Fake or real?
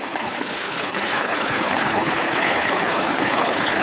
fake